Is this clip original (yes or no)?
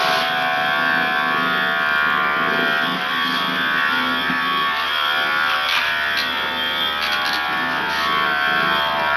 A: no